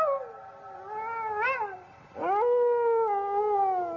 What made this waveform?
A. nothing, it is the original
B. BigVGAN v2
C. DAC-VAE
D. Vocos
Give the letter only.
A